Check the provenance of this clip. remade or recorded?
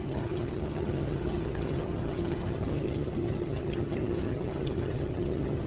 remade